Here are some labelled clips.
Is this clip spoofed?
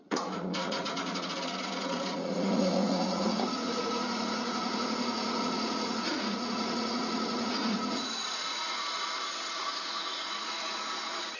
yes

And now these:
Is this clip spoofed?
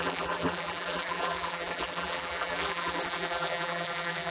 yes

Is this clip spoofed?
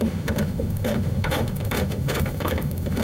yes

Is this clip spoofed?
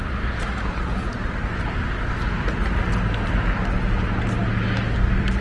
no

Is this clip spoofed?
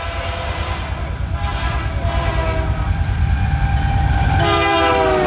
no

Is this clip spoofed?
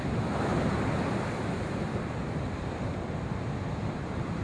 yes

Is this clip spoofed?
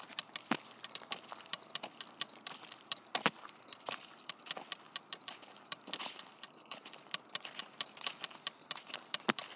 yes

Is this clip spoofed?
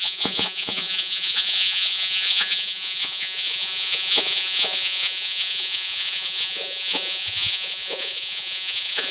yes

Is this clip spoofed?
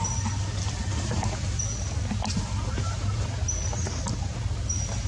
no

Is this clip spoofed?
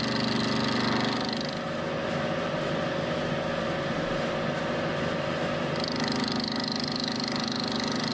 no